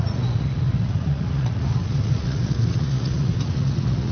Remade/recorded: remade